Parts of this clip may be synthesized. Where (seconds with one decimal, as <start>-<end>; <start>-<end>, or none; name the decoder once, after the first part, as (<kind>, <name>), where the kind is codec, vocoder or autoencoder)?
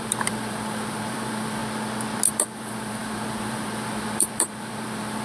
0.0-1.6 (vocoder, BigVGAN v2); 2.3-5.2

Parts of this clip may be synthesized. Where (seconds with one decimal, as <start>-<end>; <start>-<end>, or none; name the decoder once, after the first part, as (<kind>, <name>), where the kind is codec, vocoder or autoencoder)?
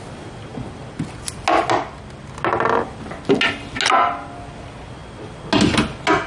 none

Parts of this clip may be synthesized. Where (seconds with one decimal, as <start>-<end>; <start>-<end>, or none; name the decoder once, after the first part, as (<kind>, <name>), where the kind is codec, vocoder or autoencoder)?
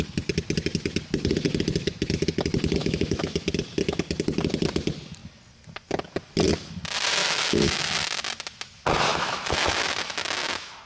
2.8-3.4 (autoencoder, DAC-VAE); 7.2-8.2; 9.1-10.9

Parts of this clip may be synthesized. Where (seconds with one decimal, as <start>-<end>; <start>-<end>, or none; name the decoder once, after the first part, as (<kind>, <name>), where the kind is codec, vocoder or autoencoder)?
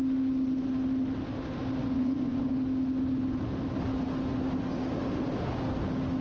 1.8-2.5 (vocoder, Vocos)